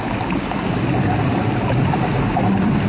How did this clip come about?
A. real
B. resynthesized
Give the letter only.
A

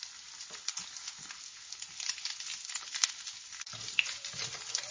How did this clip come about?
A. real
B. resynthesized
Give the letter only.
A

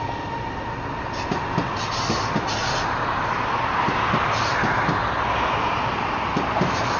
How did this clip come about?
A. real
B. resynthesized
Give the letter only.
A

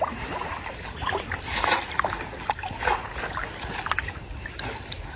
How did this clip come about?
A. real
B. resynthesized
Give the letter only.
A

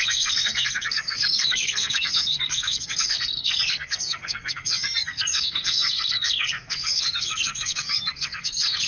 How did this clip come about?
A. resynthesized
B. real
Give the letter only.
A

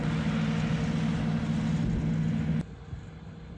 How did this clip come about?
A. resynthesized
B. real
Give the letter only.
B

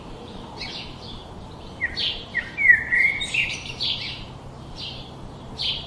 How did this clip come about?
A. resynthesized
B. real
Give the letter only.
A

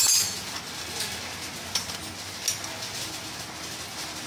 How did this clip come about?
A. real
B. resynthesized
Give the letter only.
A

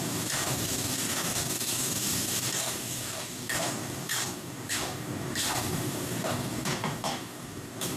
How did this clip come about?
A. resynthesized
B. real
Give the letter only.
A